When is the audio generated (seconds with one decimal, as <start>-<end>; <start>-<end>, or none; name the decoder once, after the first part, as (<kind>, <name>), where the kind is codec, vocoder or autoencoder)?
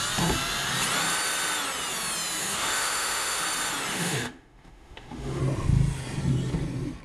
2.4-3.4 (autoencoder, DAC-VAE); 3.9-5.4